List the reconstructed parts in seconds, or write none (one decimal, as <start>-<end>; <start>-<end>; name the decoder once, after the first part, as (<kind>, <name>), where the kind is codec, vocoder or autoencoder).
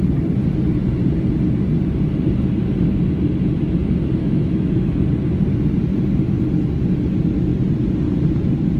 4.2-5.0 (autoencoder, DAC-VAE)